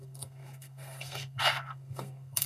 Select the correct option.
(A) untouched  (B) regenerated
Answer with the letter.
B